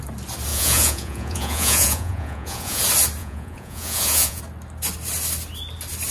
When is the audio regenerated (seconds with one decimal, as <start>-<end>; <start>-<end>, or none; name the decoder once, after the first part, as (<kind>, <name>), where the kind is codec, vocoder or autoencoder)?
0.5-2.8 (vocoder, Vocos); 3.2-4.4